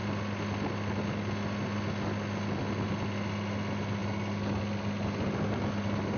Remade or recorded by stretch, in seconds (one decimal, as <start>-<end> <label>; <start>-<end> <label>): 0.0-6.2 recorded